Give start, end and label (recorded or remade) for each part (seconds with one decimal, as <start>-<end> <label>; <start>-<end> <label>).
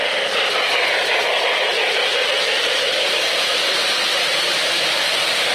0.0-1.2 remade; 1.2-2.1 recorded; 2.1-3.7 remade; 3.7-5.5 recorded